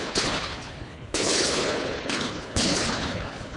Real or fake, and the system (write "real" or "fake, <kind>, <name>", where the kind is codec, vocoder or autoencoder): fake, codec, HILCodec